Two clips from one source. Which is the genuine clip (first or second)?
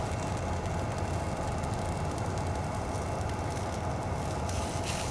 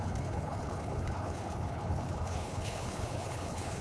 first